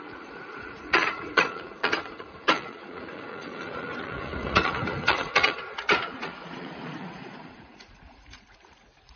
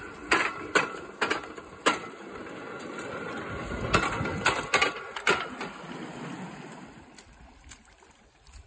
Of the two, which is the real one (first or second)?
second